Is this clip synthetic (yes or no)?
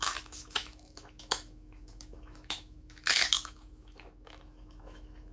yes